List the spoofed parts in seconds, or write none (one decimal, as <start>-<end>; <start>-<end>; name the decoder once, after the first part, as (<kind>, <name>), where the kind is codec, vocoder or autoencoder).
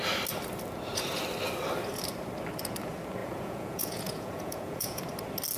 3.2-5.0 (vocoder, Vocos)